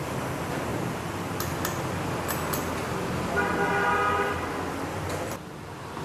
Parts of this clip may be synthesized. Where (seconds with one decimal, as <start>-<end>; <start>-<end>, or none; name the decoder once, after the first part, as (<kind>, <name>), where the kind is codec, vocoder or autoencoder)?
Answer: none